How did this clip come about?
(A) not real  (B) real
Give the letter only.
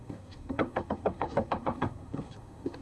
A